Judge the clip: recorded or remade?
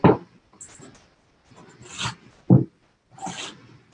recorded